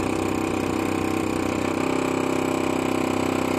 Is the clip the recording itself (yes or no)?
yes